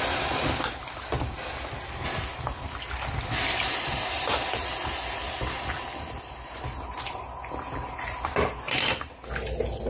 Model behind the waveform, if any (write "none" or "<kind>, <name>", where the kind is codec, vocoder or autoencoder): none